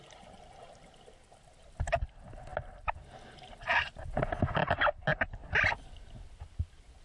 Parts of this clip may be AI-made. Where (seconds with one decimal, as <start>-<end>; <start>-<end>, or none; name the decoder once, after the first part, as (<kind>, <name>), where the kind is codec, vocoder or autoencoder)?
none